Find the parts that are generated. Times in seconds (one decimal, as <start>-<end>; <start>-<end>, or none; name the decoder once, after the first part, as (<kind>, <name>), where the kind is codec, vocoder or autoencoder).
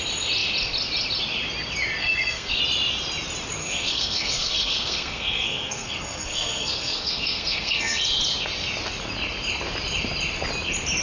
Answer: 2.0-2.6 (codec, SNAC); 3.6-8.0